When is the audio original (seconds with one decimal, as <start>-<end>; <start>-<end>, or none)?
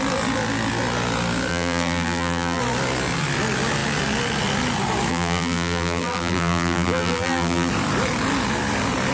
0.0-1.5; 2.6-5.1; 7.7-9.1